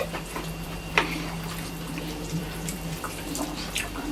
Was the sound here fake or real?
fake